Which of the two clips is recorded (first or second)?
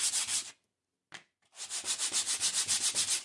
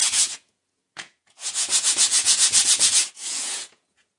first